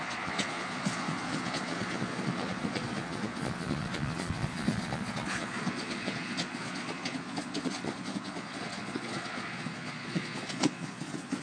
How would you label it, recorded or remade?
remade